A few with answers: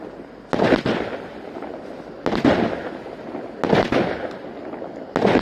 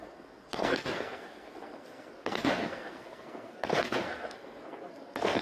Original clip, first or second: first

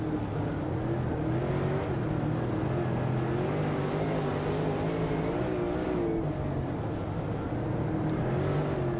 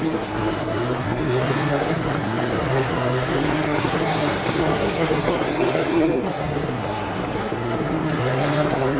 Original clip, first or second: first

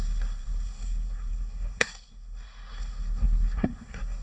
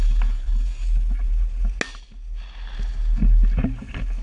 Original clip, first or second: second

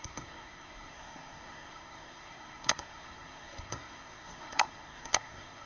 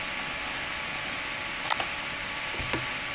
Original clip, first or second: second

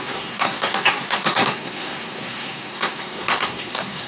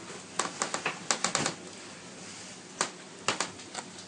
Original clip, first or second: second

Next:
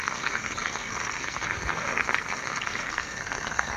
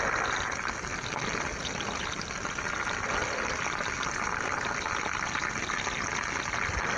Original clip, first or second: second